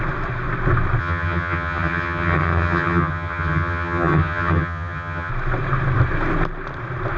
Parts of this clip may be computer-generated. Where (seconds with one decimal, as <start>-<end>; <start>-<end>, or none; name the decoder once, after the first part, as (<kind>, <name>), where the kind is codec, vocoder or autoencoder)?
1.0-5.3 (vocoder, HiFi-GAN)